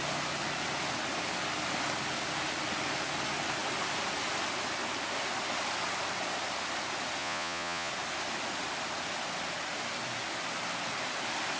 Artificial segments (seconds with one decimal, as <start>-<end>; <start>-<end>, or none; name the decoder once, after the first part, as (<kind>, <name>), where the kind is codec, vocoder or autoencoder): 7.2-7.9 (vocoder, Vocos)